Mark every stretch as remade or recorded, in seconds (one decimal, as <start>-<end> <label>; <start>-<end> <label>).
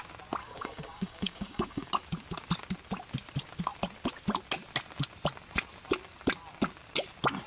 0.0-0.4 recorded; 0.4-1.9 remade; 1.9-7.5 recorded